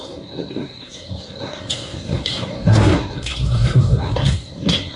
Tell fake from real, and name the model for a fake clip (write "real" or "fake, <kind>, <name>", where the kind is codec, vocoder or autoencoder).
fake, codec, SNAC